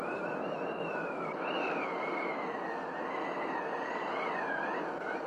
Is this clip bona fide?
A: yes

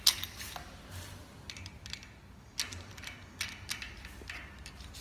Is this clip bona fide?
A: yes